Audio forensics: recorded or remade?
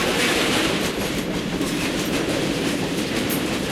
remade